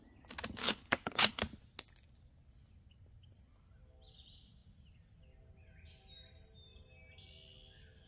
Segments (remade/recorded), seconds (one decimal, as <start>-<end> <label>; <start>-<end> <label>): 0.0-0.6 recorded; 0.6-1.4 remade; 1.4-8.1 recorded